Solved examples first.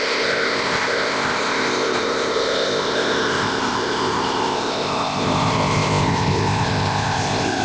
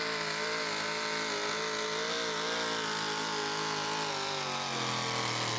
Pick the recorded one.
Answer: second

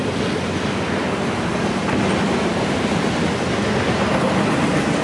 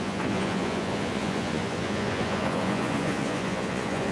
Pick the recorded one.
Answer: first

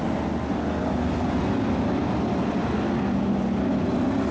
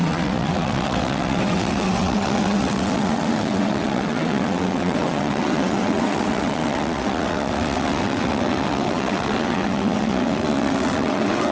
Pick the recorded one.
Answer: first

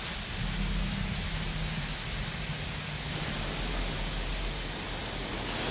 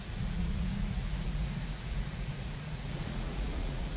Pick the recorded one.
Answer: first